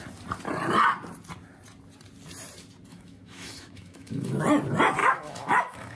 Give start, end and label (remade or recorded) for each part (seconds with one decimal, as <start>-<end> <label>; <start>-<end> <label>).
0.0-2.9 recorded; 2.9-4.4 remade; 4.4-5.0 recorded; 5.0-6.0 remade

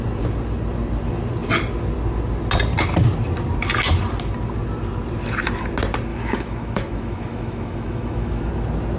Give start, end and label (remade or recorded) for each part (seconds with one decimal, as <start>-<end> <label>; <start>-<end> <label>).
0.0-6.1 recorded; 6.1-8.5 remade; 8.5-9.0 recorded

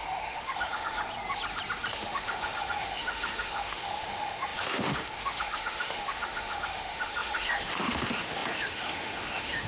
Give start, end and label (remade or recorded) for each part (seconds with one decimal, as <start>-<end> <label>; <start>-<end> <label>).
0.0-1.0 remade; 1.0-1.9 recorded; 1.9-9.7 remade